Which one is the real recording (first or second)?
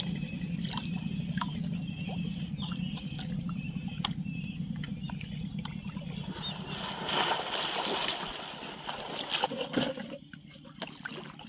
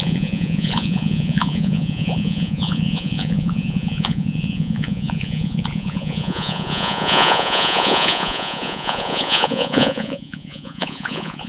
first